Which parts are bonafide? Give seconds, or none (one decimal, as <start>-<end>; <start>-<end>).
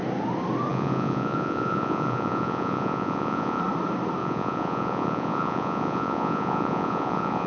0.0-0.7; 3.6-4.2